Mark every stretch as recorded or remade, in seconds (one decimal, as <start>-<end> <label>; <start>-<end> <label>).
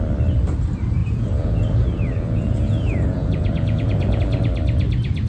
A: 0.0-1.0 recorded; 1.0-4.2 remade; 4.2-5.3 recorded